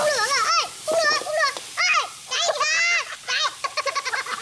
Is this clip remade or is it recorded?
recorded